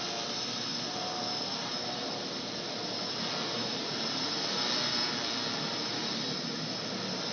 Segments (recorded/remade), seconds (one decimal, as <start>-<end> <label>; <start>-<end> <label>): 0.0-7.3 recorded